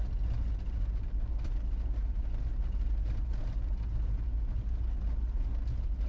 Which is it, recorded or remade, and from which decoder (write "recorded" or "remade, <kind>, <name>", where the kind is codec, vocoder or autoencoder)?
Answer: recorded